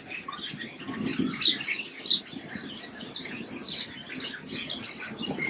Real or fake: real